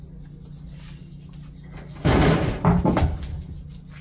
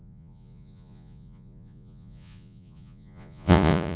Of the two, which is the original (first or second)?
first